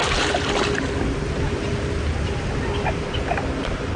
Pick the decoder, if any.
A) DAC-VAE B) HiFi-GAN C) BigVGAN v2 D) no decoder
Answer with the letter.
D